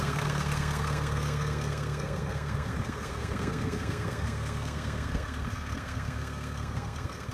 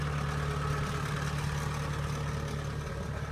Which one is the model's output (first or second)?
first